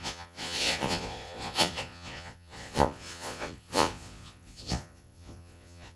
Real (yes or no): no